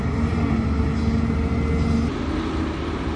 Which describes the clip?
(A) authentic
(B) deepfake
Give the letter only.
A